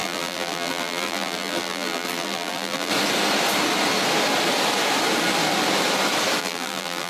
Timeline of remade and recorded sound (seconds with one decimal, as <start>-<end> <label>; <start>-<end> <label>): 0.0-2.9 remade; 2.9-6.4 recorded; 6.4-7.1 remade